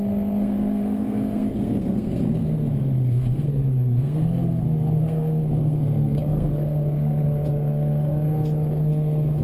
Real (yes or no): no